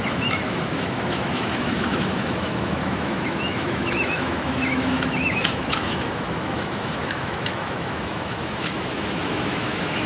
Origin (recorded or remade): remade